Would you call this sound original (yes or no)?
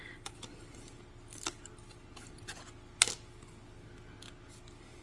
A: yes